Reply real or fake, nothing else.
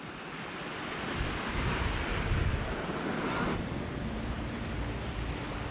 real